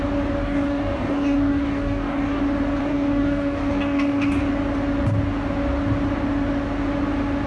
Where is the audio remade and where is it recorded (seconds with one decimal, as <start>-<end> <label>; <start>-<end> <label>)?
0.0-0.4 recorded; 0.4-2.4 remade; 2.4-2.8 recorded; 2.8-4.4 remade; 4.4-7.5 recorded